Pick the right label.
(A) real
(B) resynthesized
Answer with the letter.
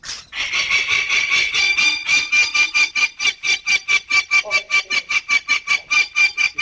A